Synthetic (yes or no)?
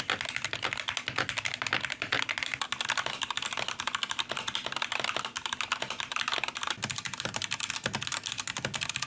no